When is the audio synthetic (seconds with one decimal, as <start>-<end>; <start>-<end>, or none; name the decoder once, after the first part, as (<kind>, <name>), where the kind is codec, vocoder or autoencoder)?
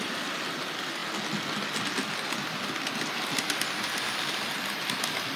none